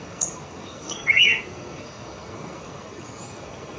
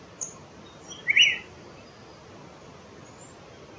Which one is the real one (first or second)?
second